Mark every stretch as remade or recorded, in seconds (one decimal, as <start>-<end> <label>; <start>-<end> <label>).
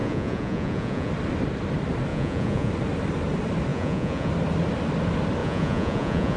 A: 0.0-1.1 remade; 1.1-2.1 recorded; 2.1-2.7 remade; 2.7-3.7 recorded; 3.7-4.3 remade; 4.3-5.4 recorded; 5.4-6.4 remade